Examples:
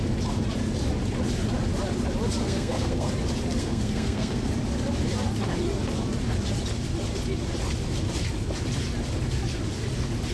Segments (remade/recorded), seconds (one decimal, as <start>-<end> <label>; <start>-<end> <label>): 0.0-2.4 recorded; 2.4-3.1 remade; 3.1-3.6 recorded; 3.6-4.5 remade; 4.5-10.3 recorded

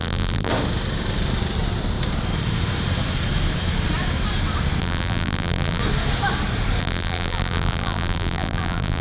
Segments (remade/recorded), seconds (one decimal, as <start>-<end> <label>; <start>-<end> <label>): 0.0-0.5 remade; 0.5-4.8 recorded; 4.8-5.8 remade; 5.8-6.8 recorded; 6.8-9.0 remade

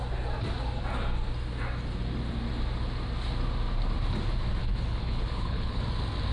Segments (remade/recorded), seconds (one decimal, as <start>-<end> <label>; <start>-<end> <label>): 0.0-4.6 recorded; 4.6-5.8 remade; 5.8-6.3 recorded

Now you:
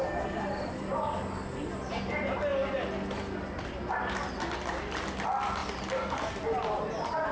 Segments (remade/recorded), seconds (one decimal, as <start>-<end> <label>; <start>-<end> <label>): 0.0-2.5 recorded; 2.5-4.4 remade; 4.4-7.3 recorded

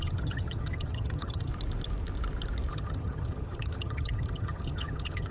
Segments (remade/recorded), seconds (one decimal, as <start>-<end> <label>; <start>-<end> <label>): 0.0-1.5 remade; 1.5-2.7 recorded; 2.7-5.3 remade

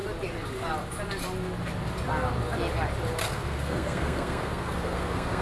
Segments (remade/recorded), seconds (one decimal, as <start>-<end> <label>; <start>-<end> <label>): 0.0-3.2 recorded; 3.2-5.4 remade